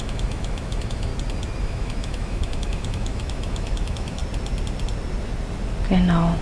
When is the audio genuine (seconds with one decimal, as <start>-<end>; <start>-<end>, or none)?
1.1-1.6; 4.2-6.4